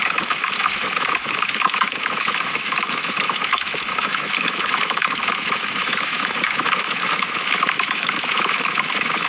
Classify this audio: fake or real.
fake